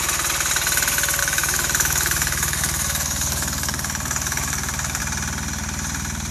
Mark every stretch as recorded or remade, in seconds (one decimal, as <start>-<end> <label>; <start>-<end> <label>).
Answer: 0.0-1.2 recorded; 1.2-5.0 remade; 5.0-6.3 recorded